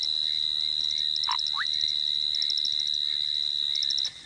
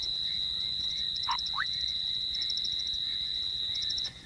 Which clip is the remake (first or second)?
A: second